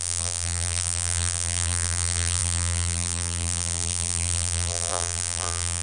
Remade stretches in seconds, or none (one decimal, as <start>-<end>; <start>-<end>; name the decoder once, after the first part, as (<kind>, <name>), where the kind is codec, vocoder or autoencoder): 0.0-5.8 (vocoder, BigVGAN v2)